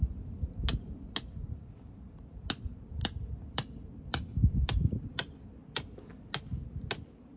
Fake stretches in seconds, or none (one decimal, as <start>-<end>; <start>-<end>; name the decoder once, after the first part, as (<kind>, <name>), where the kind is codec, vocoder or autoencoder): 1.4-2.2 (vocoder, BigVGAN v2); 3.0-5.0